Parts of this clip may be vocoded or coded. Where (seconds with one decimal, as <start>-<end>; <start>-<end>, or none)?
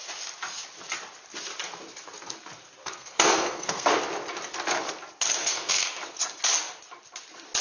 2.8-3.9; 5.4-5.9